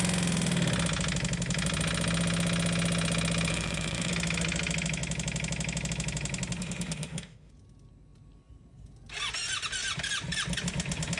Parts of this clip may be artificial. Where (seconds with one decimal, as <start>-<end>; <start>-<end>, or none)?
3.5-4.1; 6.6-7.5